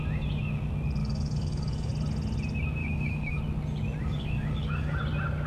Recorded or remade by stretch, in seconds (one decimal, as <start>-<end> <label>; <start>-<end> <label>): 0.0-1.0 recorded; 1.0-1.9 remade; 1.9-2.8 recorded; 2.8-3.4 remade; 3.4-4.0 recorded; 4.0-5.0 remade; 5.0-5.5 recorded